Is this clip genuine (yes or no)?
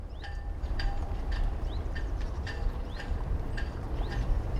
no